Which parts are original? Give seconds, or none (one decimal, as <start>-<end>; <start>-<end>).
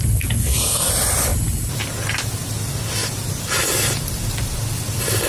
0.0-0.4; 0.9-5.3